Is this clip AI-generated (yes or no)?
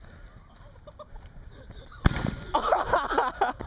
no